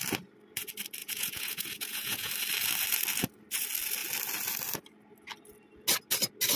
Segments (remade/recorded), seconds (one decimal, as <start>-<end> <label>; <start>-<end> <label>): 0.0-1.0 recorded; 1.0-2.3 remade; 2.3-6.6 recorded